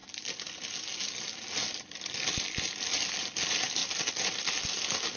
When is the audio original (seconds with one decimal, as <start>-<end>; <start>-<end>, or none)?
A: 0.0-3.8; 4.4-5.2